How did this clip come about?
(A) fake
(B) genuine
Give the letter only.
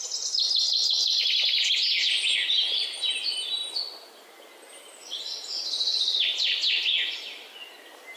B